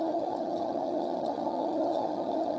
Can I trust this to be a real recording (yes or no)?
no